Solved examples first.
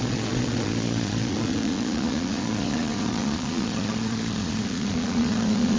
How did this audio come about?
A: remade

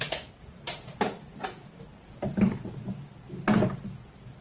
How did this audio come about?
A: recorded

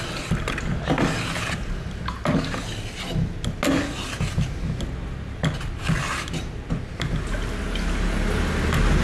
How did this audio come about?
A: recorded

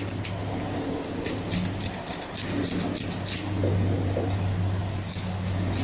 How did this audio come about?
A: recorded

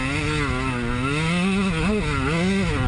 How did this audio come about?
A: recorded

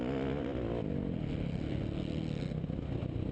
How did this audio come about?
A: recorded